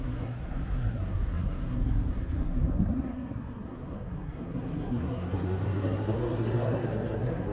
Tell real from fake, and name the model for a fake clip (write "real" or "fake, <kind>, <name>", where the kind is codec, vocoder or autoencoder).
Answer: fake, codec, SNAC